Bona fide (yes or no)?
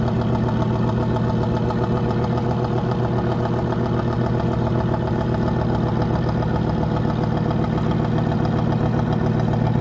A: yes